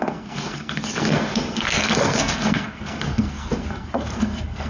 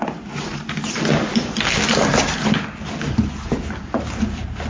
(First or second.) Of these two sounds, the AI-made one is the first